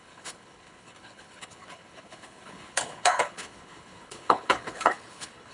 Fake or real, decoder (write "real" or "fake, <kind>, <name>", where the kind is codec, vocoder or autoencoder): fake, codec, HILCodec